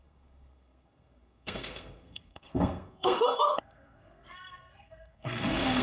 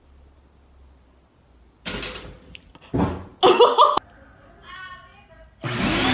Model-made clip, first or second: first